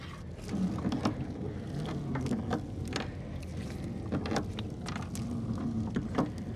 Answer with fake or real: real